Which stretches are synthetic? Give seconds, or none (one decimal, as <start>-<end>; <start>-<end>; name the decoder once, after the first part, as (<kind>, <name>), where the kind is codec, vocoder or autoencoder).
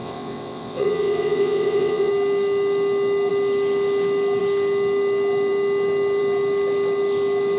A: 0.0-2.1 (vocoder, WaveNeXt)